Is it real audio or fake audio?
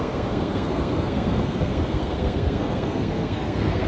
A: fake